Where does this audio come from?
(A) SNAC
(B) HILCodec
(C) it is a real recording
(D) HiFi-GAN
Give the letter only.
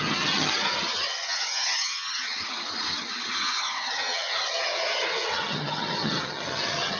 D